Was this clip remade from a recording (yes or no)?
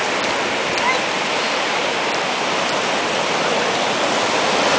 no